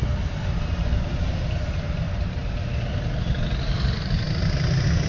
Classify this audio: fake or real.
real